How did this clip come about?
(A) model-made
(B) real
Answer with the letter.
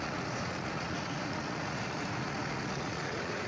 A